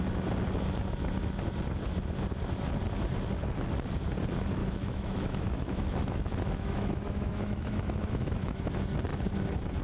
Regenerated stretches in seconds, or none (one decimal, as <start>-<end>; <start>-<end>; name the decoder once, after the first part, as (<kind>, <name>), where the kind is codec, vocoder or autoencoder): 4.6-8.7 (autoencoder, DAC-VAE)